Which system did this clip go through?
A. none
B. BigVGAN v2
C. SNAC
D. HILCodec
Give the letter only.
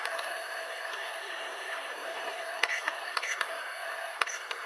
C